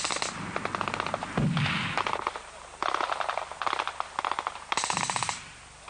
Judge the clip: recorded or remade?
recorded